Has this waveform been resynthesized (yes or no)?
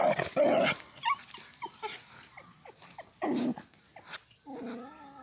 no